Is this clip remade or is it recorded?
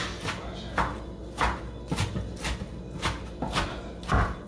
recorded